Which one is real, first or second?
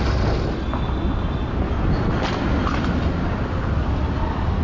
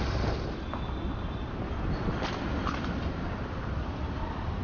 first